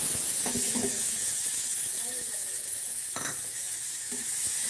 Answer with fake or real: fake